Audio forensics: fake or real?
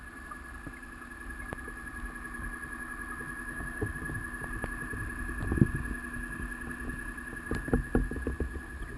real